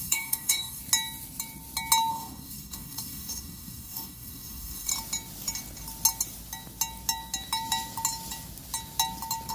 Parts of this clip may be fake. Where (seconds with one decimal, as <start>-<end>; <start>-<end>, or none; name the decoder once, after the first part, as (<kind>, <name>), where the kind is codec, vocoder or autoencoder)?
0.0-0.8 (codec, DAC); 2.1-4.9